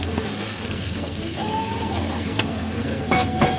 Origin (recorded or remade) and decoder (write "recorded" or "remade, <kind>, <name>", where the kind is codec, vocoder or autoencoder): remade, codec, SNAC